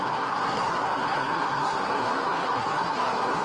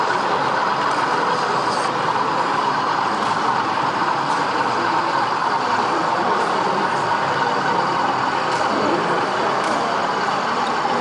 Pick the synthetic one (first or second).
first